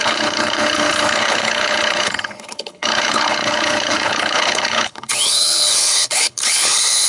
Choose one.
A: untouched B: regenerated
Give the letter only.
B